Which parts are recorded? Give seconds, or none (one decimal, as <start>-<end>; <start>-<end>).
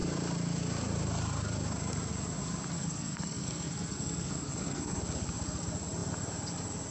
0.0-2.7; 5.0-6.9